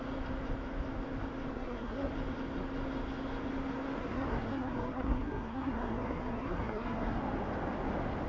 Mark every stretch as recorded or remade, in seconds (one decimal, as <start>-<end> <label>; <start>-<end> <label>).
0.0-1.5 recorded; 1.5-2.1 remade; 2.1-4.0 recorded; 4.0-7.2 remade; 7.2-8.3 recorded